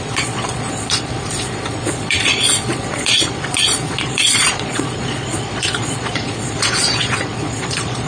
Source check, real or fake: fake